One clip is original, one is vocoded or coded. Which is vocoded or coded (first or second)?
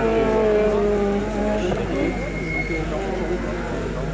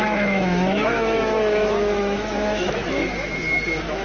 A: second